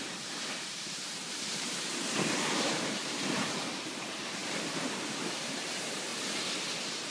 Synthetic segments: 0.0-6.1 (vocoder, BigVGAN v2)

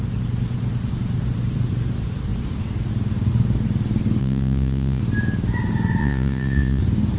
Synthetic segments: 4.2-5.0 (vocoder, Vocos); 6.0-6.8

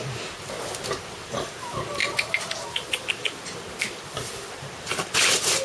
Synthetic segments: 1.0-2.0 (vocoder, BigVGAN v2); 3.1-5.6

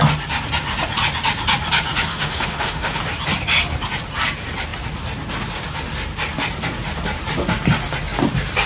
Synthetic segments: 2.1-3.0 (autoencoder, DAC-VAE)

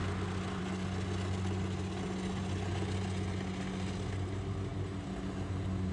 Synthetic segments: none